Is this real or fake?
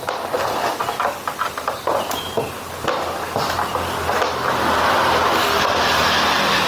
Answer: real